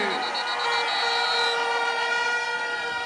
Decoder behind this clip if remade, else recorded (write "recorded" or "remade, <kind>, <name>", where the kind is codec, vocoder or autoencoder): recorded